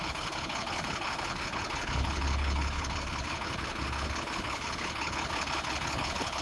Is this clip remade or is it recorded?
remade